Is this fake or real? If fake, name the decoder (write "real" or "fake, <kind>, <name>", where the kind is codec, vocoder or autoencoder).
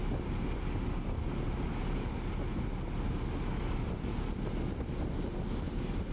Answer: real